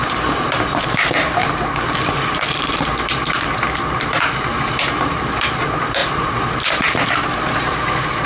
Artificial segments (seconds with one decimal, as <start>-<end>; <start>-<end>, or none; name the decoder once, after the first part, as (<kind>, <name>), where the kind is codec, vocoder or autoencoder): 0.0-8.3 (vocoder, BigVGAN v2)